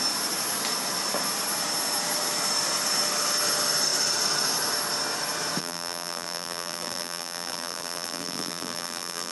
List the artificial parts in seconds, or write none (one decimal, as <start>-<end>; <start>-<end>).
5.6-9.3